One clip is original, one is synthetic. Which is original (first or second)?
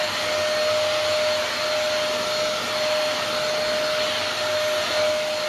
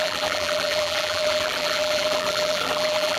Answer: first